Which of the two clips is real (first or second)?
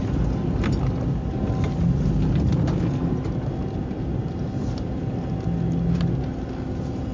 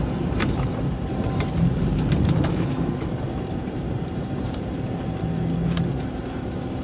first